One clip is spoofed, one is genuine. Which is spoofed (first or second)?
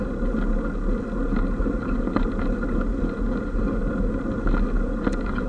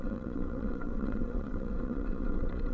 second